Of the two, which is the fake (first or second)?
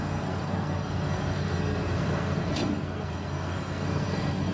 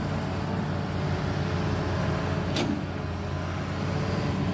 first